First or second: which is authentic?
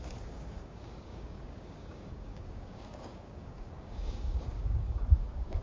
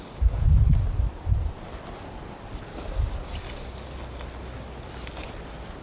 second